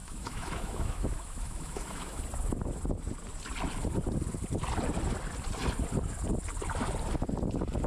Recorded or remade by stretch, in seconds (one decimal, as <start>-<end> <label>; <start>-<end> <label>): 0.0-2.2 remade; 2.2-7.9 recorded